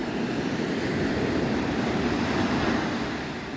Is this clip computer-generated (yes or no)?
no